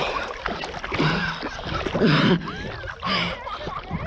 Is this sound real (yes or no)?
yes